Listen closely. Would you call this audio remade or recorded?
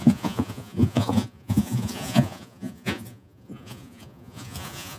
remade